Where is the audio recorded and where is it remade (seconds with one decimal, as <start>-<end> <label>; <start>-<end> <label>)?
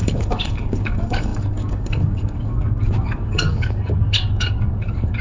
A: 0.0-5.2 remade